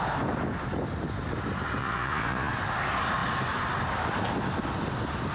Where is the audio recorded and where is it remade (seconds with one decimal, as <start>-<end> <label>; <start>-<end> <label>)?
0.0-1.8 recorded; 1.8-2.5 remade; 2.5-5.3 recorded